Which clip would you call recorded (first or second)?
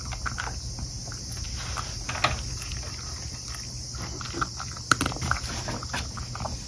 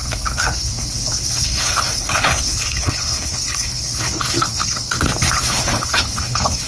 first